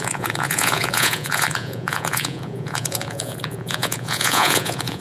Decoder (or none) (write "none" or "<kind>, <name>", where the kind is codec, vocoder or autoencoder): vocoder, Vocos